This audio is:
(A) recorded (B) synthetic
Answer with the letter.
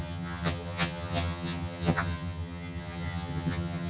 B